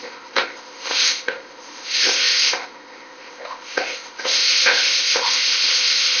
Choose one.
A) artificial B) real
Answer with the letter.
A